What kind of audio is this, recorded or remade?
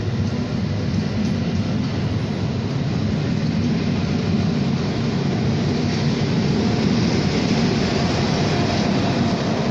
recorded